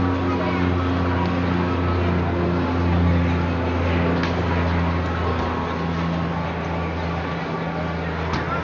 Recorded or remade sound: recorded